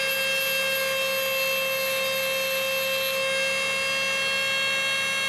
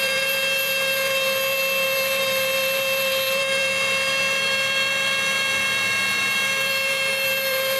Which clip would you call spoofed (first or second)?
second